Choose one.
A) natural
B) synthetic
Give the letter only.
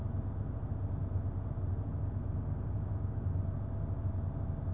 A